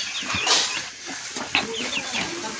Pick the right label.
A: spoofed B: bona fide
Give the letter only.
B